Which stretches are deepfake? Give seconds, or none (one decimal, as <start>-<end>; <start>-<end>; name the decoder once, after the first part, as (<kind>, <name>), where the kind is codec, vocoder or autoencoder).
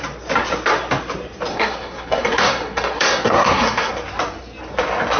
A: 1.5-3.9 (codec, SNAC)